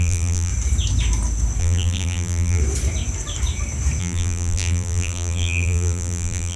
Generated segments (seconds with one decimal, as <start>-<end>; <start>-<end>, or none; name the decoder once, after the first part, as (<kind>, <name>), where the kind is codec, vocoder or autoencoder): 0.0-0.5 (vocoder, BigVGAN v2); 1.6-2.6; 4.0-6.6